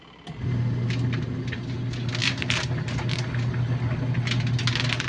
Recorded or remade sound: recorded